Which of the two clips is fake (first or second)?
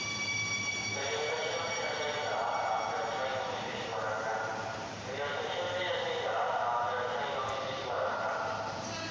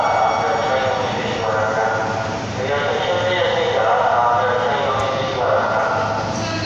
first